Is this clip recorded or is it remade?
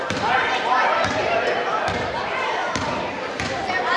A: remade